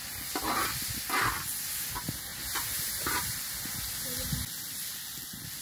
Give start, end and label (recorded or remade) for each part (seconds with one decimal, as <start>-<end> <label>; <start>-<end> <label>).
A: 0.0-2.3 recorded; 2.3-3.4 remade; 3.4-5.6 recorded